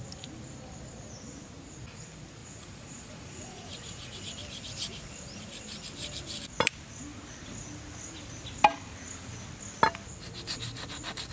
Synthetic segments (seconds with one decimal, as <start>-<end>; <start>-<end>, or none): 2.4-4.2